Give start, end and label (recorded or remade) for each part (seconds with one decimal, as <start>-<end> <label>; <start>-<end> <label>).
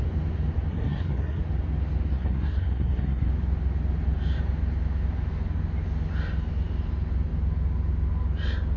0.0-0.7 recorded; 0.7-1.4 remade; 1.4-2.1 recorded; 2.1-3.3 remade; 3.3-8.8 recorded